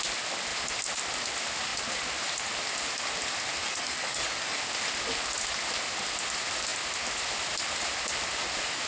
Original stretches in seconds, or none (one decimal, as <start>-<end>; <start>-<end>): 0.0-3.6; 4.6-8.9